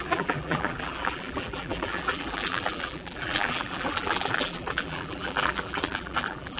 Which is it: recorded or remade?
remade